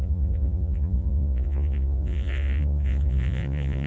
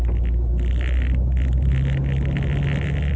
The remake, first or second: first